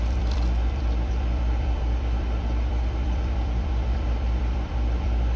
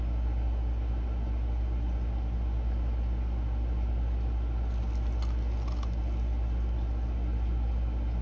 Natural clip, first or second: second